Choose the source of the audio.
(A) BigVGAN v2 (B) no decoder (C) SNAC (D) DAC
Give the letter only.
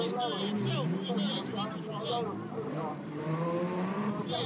A